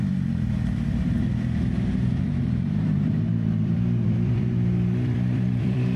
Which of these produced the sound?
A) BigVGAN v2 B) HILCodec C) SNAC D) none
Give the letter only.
A